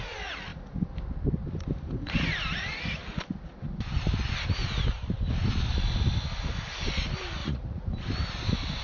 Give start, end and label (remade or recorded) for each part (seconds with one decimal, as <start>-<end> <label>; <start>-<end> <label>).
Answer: 0.0-7.4 recorded; 7.4-7.9 remade; 7.9-8.8 recorded